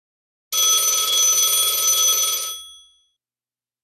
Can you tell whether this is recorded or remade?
recorded